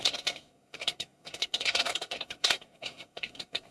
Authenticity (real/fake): fake